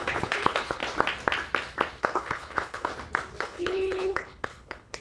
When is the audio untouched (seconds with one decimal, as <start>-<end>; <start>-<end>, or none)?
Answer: 0.8-2.0; 2.9-3.4